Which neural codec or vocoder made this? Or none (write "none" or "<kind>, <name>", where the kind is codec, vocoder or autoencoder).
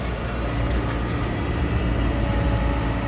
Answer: none